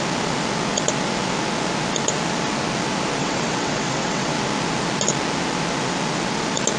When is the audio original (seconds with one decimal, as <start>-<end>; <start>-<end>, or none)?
0.0-3.2; 4.3-6.8